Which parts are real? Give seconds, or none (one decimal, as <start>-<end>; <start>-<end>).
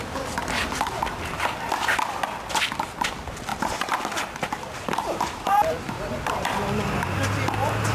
0.0-3.5; 6.3-7.9